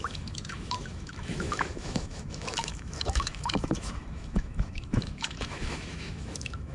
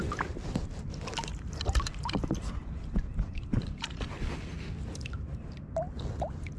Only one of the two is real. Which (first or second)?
second